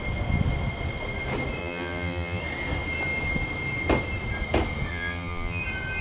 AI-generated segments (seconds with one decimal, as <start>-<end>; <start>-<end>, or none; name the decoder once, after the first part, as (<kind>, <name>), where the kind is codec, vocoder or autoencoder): 1.6-2.4 (vocoder, BigVGAN v2); 4.9-5.6